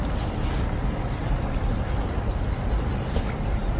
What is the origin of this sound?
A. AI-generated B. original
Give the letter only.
B